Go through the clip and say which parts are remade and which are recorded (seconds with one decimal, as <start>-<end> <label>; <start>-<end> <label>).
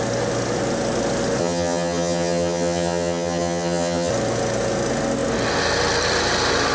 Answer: 0.0-1.4 recorded; 1.4-4.1 remade; 4.1-6.7 recorded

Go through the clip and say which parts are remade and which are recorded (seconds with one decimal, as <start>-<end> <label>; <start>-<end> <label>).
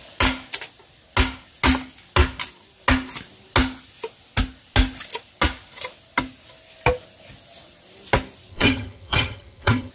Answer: 0.0-8.5 recorded; 8.5-9.9 remade